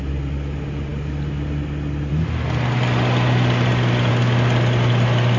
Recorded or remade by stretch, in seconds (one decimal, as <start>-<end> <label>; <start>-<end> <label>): 0.0-5.4 recorded